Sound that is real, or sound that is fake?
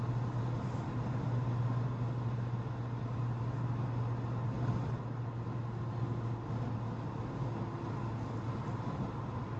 real